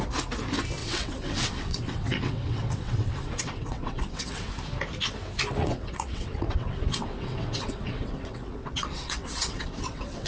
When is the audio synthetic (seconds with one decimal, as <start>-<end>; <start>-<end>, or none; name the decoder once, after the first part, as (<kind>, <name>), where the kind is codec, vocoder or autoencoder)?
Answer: 0.8-4.5 (vocoder, WaveNeXt); 5.6-10.3